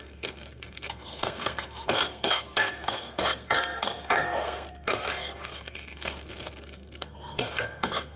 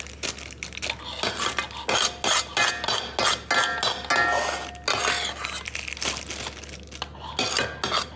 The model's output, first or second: first